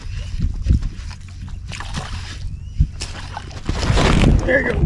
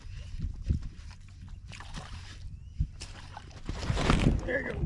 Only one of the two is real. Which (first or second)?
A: first